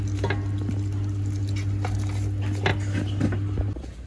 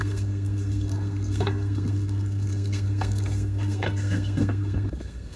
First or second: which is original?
first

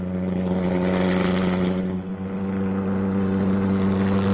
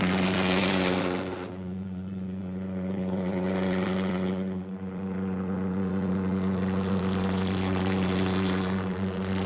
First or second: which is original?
first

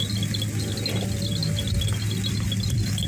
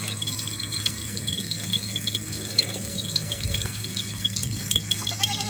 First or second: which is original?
first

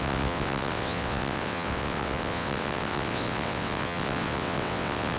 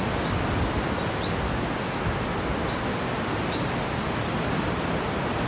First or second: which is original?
second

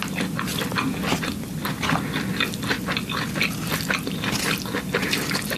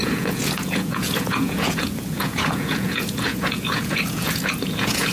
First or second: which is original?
first